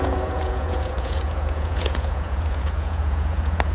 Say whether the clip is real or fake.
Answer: fake